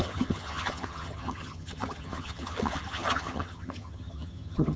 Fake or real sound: fake